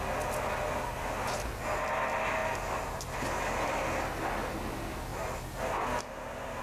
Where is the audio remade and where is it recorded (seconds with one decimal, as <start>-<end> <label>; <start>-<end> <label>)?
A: 0.0-6.6 recorded